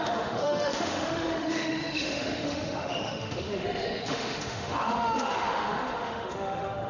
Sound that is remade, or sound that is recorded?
remade